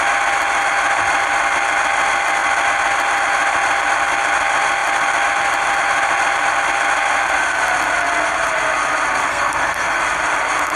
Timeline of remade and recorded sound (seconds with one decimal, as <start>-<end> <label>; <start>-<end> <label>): 0.0-9.3 recorded; 9.3-10.0 remade; 10.0-10.8 recorded